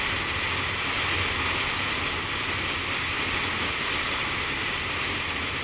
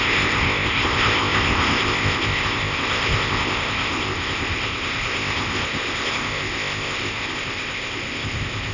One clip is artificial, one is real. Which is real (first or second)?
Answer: first